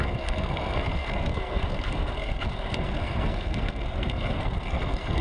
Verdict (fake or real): fake